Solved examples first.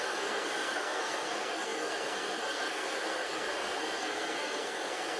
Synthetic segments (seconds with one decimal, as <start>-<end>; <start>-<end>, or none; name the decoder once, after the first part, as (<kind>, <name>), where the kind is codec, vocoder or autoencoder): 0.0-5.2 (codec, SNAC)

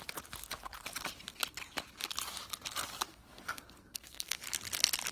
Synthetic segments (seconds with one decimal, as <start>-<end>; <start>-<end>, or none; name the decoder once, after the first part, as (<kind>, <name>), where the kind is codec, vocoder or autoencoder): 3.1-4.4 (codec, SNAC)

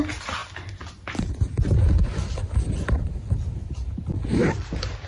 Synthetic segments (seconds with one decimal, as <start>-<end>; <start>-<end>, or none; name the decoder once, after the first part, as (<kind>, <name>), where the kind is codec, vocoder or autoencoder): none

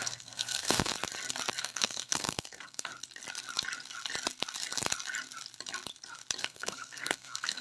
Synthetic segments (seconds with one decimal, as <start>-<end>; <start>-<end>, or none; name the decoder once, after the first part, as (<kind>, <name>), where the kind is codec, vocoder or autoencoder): 0.0-0.9 (codec, SNAC); 1.6-2.9; 6.4-7.6

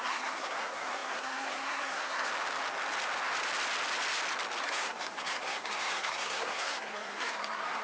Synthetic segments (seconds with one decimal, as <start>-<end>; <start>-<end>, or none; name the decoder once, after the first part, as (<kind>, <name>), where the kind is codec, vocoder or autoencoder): 0.0-2.3 (codec, SNAC); 4.6-7.8

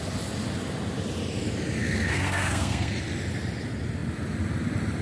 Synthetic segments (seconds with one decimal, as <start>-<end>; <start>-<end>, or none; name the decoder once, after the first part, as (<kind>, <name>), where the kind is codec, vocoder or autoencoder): 1.8-2.9 (codec, SNAC)

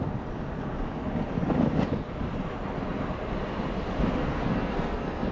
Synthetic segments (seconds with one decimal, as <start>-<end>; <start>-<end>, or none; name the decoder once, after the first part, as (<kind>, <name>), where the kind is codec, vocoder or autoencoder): 4.2-5.3 (codec, SNAC)